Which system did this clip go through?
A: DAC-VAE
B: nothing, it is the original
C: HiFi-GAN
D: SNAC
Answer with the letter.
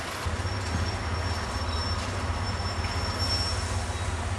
B